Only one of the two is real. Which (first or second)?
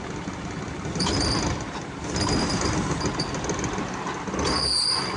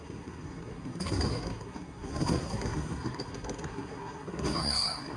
first